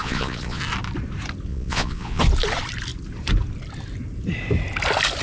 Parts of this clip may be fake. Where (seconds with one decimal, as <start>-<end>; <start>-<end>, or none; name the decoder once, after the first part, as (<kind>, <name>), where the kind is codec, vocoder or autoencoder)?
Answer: 0.0-0.6 (vocoder, Vocos); 1.5-2.2